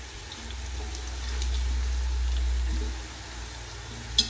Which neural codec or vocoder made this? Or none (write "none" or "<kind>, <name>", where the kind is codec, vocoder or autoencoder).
none